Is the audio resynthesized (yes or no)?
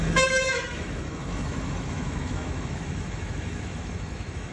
yes